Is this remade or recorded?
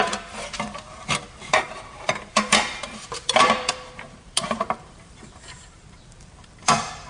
remade